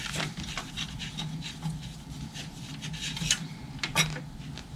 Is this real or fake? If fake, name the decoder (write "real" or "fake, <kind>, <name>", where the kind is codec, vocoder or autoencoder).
real